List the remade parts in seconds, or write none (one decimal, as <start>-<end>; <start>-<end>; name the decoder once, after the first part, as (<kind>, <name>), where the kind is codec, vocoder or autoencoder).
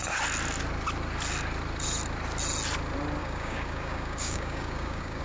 3.2-5.2 (codec, DAC)